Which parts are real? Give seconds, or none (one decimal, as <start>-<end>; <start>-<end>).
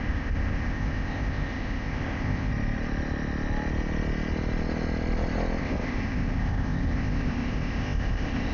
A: 2.5-5.6